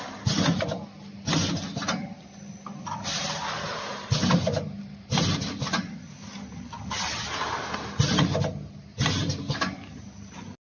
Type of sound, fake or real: real